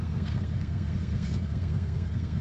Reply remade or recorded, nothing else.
remade